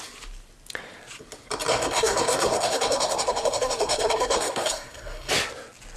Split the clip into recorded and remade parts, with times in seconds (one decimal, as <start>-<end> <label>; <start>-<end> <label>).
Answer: 0.0-1.7 recorded; 1.7-5.3 remade; 5.3-6.0 recorded